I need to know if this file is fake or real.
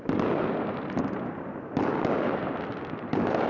real